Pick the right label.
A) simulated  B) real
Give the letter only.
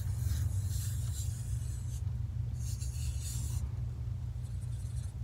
B